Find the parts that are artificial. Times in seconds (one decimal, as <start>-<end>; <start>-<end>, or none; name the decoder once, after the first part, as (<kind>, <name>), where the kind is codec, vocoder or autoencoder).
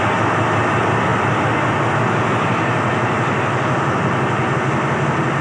none